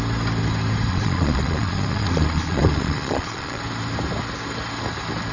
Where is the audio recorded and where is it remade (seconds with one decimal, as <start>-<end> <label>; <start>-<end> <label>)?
0.0-0.9 recorded; 0.9-3.6 remade; 3.6-5.3 recorded